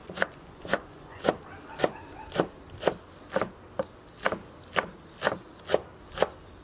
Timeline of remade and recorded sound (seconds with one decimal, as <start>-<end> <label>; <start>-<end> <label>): 0.0-1.2 remade; 1.2-6.6 recorded

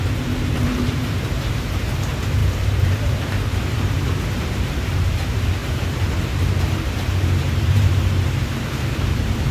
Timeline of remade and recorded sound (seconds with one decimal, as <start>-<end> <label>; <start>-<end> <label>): 0.0-9.5 remade

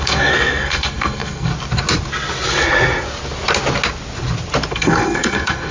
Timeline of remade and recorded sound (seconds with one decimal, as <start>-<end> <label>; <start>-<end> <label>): 0.0-1.5 remade; 1.5-4.7 recorded; 4.7-5.7 remade

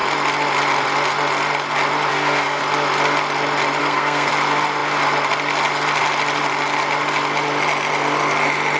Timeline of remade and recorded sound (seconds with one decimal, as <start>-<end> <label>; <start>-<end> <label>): 0.0-2.1 recorded; 2.1-2.6 remade; 2.6-3.8 recorded; 3.8-4.3 remade; 4.3-8.8 recorded

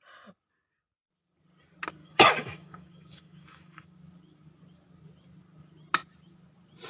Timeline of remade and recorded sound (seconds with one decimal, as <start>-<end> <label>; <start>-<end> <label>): 0.0-2.0 recorded; 2.0-3.8 remade; 3.8-6.9 recorded

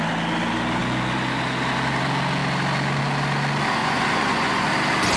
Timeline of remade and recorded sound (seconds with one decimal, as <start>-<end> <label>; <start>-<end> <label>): 0.0-3.8 recorded; 3.8-4.7 remade; 4.7-5.2 recorded

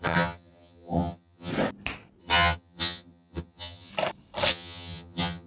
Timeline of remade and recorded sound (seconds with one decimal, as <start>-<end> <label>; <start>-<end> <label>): 0.0-1.5 remade; 1.5-2.2 recorded; 2.2-3.9 remade; 3.9-4.5 recorded; 4.5-5.5 remade